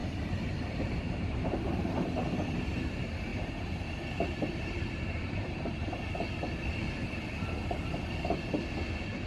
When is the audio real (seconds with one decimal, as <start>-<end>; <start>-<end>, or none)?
1.7-3.3; 5.9-9.3